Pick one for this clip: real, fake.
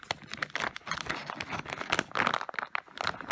real